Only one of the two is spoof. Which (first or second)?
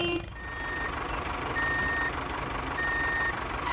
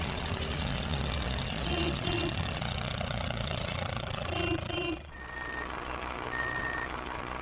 second